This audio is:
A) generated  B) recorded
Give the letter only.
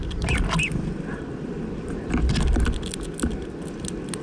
B